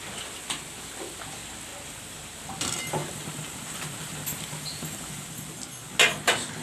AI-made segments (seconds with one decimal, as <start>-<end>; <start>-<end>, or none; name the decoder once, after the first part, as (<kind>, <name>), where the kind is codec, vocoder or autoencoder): 1.7-2.4 (vocoder, BigVGAN v2); 3.0-5.3